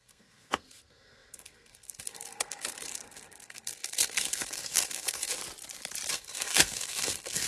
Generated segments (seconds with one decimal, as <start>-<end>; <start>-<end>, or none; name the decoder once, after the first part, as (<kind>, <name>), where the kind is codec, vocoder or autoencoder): 0.0-5.4 (codec, SNAC); 6.1-7.5